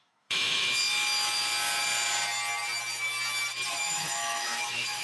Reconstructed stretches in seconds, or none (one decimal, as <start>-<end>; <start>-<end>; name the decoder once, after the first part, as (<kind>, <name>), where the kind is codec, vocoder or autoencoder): 0.0-0.8 (autoencoder, DAC-VAE); 3.7-5.0